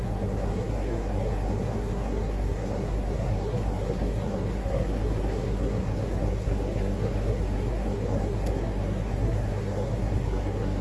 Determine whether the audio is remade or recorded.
remade